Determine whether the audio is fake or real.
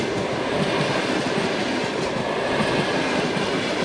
real